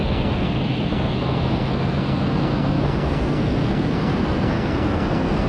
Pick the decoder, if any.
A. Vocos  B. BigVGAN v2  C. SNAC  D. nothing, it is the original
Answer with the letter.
C